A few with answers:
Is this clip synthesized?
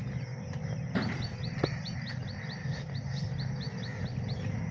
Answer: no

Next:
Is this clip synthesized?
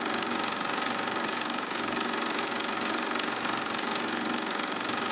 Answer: yes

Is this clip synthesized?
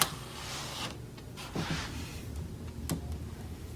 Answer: no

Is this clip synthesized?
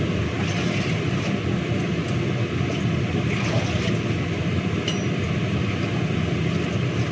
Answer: no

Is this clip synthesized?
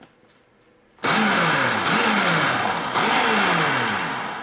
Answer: no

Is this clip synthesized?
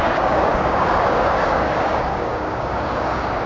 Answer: yes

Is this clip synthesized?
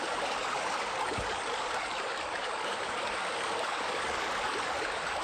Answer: yes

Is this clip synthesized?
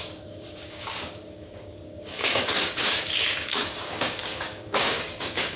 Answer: yes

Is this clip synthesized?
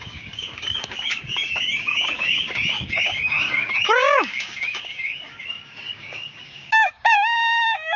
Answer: yes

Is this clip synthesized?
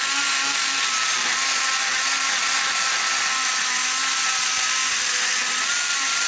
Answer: no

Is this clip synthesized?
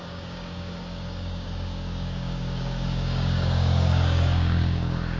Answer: yes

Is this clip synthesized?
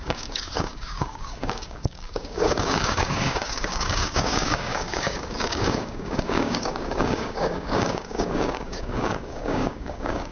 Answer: yes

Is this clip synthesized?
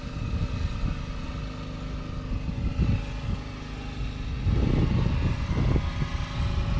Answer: no